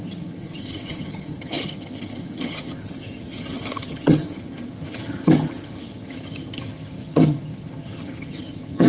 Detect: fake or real fake